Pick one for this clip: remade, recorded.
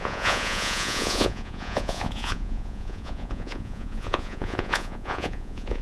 remade